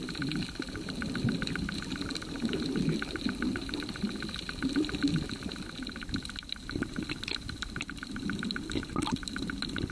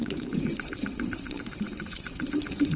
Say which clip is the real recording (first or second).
first